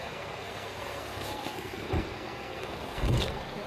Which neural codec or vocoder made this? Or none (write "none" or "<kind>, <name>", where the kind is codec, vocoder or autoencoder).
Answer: codec, SNAC